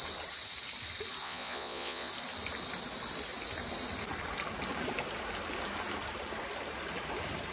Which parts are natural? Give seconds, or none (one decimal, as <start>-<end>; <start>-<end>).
0.0-1.2; 2.1-7.5